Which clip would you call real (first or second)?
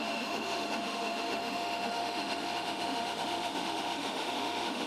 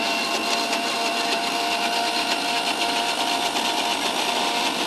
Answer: second